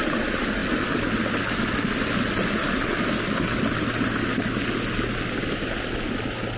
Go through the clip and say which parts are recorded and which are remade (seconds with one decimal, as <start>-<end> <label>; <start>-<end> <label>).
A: 0.0-6.6 recorded